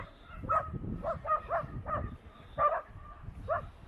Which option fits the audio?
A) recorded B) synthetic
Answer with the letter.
A